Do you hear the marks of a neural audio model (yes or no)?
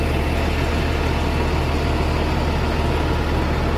no